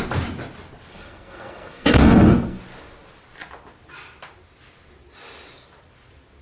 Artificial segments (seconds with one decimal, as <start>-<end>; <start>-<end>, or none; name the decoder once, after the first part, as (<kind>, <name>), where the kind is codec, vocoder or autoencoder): 0.9-2.6 (codec, SNAC)